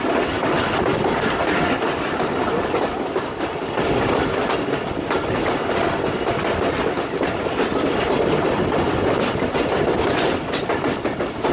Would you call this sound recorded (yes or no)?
yes